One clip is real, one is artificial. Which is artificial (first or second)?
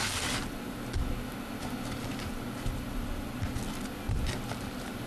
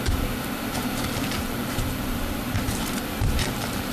second